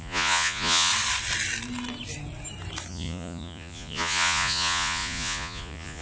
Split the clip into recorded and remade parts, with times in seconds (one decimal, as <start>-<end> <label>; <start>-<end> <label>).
0.0-0.9 remade; 0.9-2.9 recorded; 2.9-6.0 remade